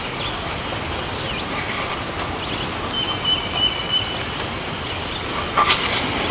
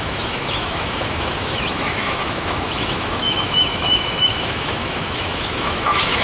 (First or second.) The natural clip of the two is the first